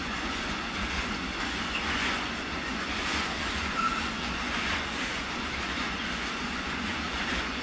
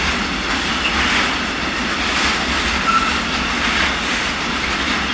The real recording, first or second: second